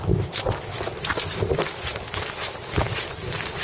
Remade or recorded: recorded